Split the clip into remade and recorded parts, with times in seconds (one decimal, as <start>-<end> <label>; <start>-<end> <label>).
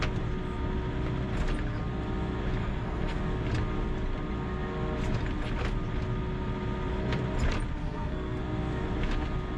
0.0-2.6 recorded; 2.6-3.2 remade; 3.2-7.8 recorded; 7.8-8.4 remade; 8.4-9.6 recorded